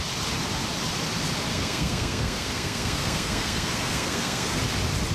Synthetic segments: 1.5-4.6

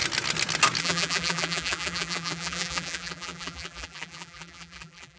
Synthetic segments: 0.8-5.2

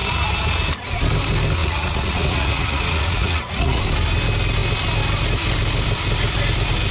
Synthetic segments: 1.6-3.8

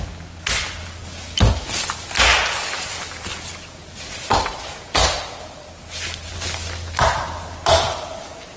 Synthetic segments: none

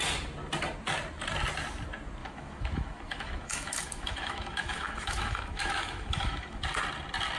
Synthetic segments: 2.2-6.6

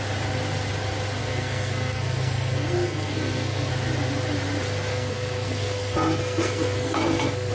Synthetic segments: 1.2-3.7; 4.9-7.5

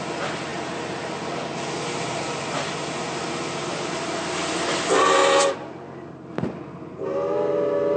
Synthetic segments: none